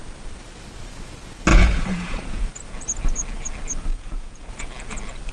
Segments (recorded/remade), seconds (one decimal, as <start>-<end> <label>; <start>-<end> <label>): 0.0-1.5 recorded; 1.5-2.5 remade; 2.5-3.9 recorded; 3.9-4.5 remade; 4.5-5.3 recorded